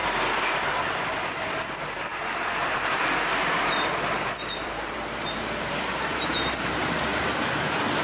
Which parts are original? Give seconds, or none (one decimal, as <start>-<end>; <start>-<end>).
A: 0.0-1.3